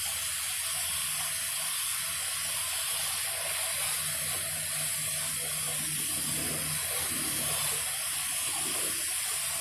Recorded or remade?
recorded